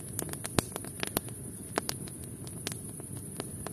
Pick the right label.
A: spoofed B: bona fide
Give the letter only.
B